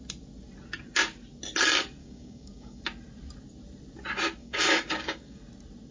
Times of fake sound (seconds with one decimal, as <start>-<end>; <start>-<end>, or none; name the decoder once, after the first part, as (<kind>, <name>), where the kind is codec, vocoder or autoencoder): 2.0-2.8 (codec, DAC); 4.4-5.4